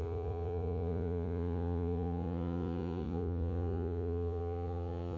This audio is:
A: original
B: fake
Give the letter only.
B